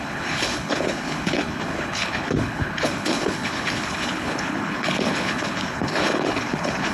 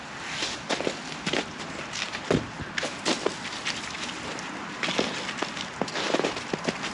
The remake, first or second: first